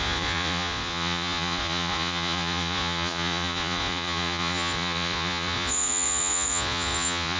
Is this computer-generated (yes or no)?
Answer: yes